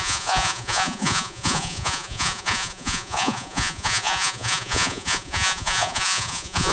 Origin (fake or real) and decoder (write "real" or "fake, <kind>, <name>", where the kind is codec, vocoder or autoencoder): fake, vocoder, Vocos